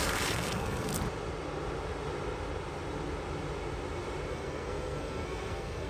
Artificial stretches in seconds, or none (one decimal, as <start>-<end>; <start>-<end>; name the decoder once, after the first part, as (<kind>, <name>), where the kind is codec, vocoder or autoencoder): 0.0-0.9 (codec, SNAC); 4.3-5.9